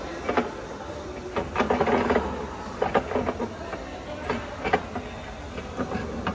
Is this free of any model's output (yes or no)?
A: yes